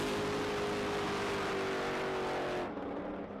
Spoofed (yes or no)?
no